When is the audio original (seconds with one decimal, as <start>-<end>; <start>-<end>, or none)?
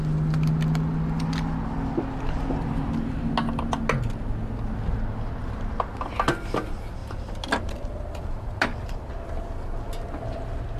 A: 0.0-10.8